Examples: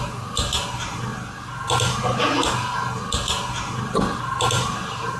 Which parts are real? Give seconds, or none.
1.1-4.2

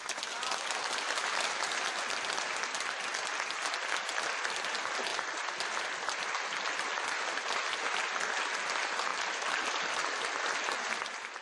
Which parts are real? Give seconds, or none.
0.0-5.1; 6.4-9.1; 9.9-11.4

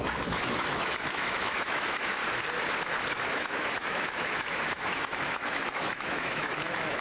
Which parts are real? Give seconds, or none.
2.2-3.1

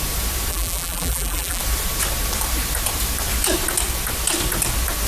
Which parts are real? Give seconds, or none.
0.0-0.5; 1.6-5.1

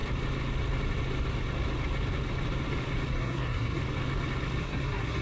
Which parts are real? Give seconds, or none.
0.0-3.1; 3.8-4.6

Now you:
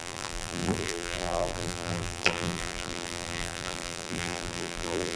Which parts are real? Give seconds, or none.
none

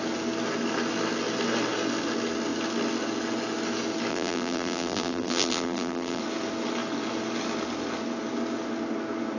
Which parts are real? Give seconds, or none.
0.0-4.1; 6.2-9.4